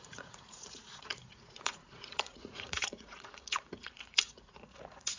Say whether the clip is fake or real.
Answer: fake